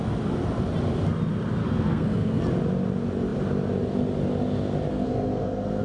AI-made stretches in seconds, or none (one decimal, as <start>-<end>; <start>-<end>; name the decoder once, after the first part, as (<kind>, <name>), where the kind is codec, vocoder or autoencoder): 1.6-2.4 (codec, SNAC); 4.9-5.8